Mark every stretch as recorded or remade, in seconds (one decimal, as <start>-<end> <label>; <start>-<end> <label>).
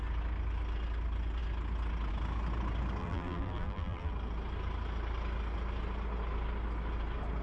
0.0-3.0 recorded; 3.0-4.1 remade; 4.1-7.4 recorded